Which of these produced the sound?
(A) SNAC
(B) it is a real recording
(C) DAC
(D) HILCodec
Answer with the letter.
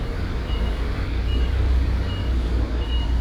C